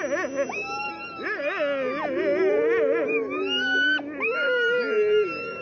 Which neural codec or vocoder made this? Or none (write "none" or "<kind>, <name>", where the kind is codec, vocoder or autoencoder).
none